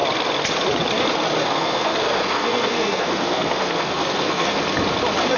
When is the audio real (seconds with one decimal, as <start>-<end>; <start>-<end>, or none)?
0.0-1.4; 4.6-5.4

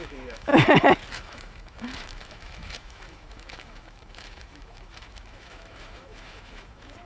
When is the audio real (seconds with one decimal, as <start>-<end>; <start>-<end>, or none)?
0.5-1.1

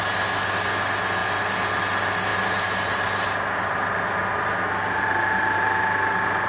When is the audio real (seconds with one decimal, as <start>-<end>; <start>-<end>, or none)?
0.0-2.3; 4.2-6.5